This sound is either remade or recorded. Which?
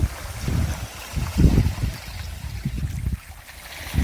recorded